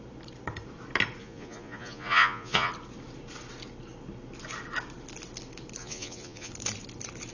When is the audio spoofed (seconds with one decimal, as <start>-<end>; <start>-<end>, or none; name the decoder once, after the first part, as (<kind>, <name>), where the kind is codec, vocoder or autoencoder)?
1.2-2.7 (vocoder, Vocos); 5.8-6.5